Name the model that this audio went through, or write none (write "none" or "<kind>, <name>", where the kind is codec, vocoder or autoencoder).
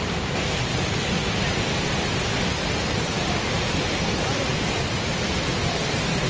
none